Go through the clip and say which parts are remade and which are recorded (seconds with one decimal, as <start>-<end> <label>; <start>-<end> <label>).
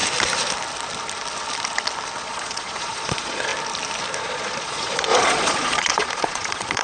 0.0-2.2 recorded; 2.2-3.5 remade; 3.5-4.2 recorded; 4.2-6.8 remade